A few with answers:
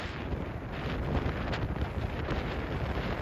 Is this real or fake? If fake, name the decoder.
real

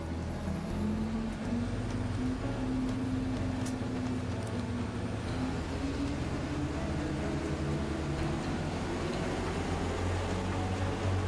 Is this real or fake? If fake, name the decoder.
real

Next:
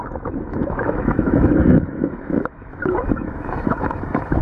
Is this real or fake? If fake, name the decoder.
fake, autoencoder, DAC-VAE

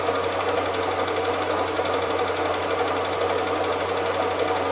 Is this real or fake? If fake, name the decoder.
real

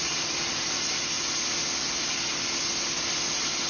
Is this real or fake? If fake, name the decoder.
real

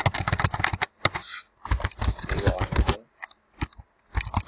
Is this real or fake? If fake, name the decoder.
real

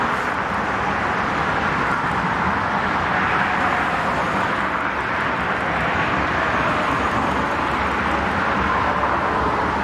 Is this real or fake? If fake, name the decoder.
real